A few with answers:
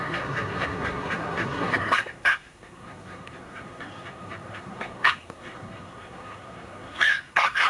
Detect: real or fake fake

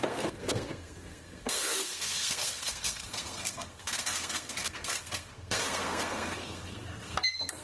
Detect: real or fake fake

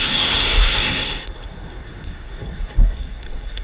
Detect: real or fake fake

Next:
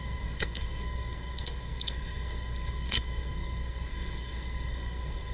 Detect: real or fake fake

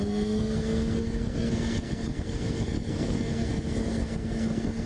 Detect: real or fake fake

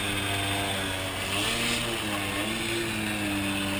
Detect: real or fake real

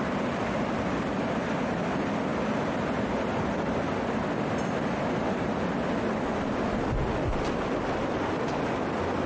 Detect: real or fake real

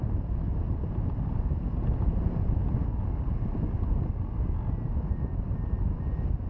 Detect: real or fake real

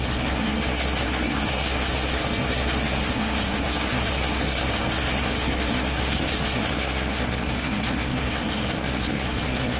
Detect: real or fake fake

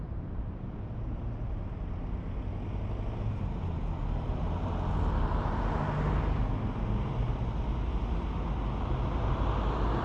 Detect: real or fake real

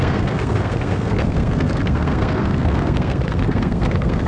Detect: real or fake fake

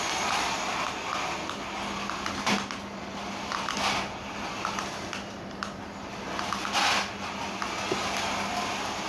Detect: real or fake real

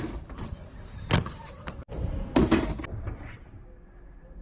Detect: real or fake real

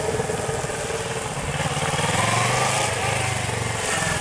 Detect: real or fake real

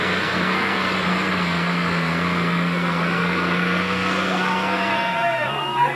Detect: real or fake fake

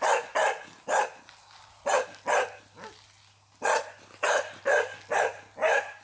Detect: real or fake real